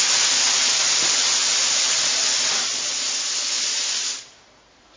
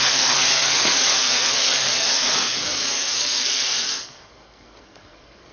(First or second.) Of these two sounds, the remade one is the second